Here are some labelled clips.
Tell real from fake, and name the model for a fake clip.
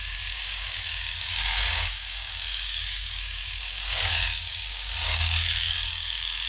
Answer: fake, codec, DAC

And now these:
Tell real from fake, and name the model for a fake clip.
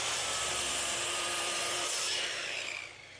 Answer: fake, vocoder, BigVGAN v2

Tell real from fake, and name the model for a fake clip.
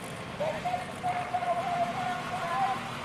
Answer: real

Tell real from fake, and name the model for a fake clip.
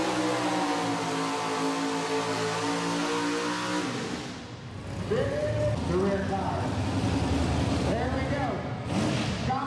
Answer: real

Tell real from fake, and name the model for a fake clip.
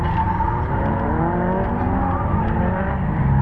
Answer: real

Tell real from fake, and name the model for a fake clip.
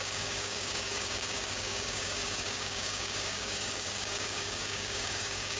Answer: fake, codec, DAC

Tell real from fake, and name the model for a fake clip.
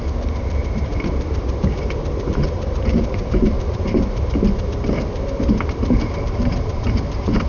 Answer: fake, vocoder, BigVGAN v2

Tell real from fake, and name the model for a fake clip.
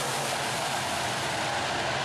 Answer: real